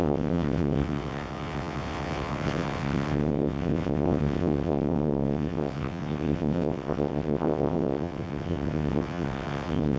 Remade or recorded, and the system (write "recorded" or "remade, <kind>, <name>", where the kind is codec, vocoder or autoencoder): remade, vocoder, WaveNeXt